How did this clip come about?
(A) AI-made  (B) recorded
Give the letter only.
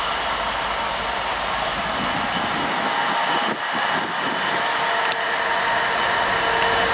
B